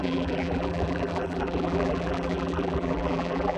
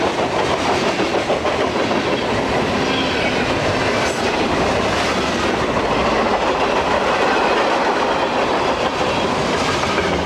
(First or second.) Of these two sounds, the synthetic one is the first